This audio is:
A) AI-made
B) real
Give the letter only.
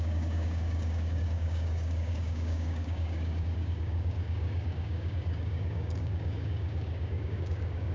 A